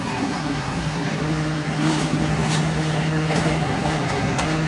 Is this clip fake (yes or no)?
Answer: yes